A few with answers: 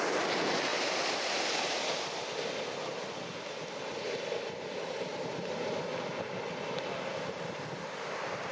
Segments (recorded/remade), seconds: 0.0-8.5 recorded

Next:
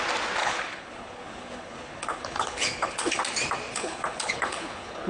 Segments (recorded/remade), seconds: 0.0-0.4 recorded; 0.4-3.2 remade; 3.2-3.7 recorded; 3.7-5.1 remade